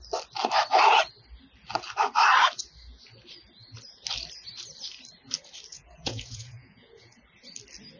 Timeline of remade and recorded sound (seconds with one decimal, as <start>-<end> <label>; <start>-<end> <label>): 0.0-5.7 recorded; 5.7-7.2 remade; 7.2-8.0 recorded